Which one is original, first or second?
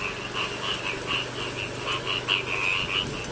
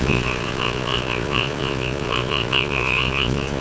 first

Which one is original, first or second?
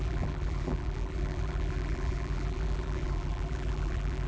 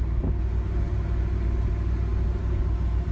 second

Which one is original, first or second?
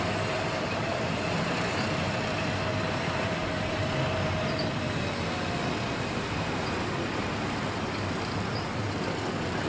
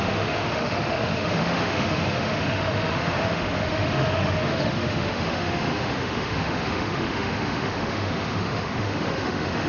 first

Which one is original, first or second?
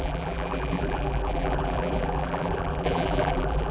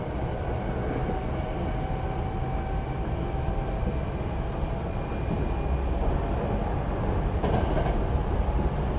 second